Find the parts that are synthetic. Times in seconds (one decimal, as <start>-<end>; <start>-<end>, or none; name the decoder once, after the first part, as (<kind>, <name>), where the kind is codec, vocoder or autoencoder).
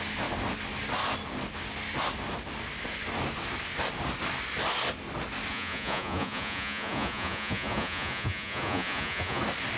5.5-9.4 (vocoder, Vocos)